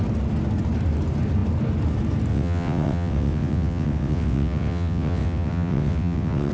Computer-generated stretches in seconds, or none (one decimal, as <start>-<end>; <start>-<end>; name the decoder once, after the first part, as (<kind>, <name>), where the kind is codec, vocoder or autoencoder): 2.3-6.5 (vocoder, WaveNeXt)